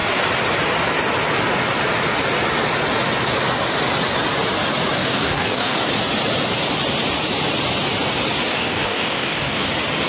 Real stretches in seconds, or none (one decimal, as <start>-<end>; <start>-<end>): 0.0-5.0; 5.8-8.5; 9.7-10.1